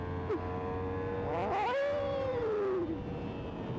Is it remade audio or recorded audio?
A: recorded